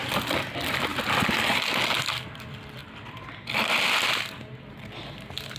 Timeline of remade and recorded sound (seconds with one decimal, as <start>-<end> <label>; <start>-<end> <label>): 0.0-5.6 recorded